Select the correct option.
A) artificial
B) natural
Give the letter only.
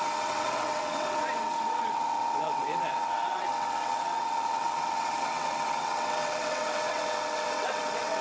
A